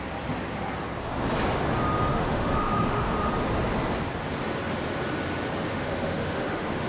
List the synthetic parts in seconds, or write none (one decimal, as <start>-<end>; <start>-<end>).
2.1-3.3; 5.7-6.9